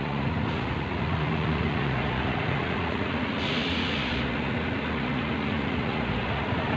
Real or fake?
fake